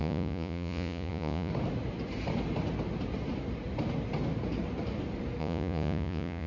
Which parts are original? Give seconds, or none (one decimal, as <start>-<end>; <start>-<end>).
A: 1.5-5.4